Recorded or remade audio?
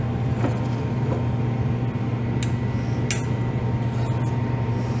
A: recorded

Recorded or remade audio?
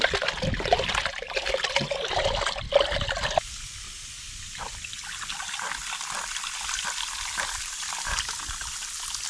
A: recorded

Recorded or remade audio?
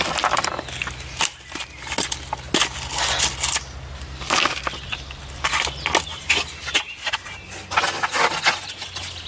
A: recorded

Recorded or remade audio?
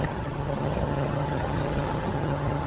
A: remade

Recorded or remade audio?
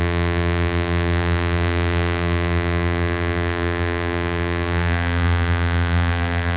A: remade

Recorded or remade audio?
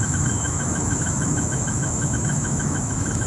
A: remade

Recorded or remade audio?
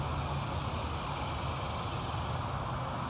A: recorded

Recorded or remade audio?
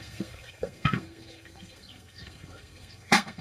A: remade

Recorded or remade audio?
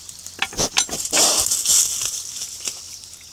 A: recorded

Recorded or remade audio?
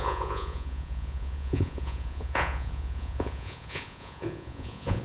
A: remade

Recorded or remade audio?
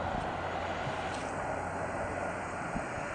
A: recorded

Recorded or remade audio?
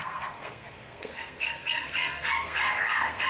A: remade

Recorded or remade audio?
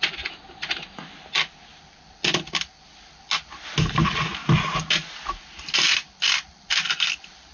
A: recorded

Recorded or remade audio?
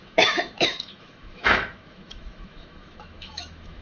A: remade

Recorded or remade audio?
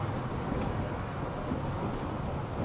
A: recorded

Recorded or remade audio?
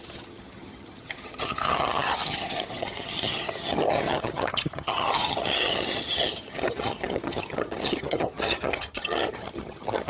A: remade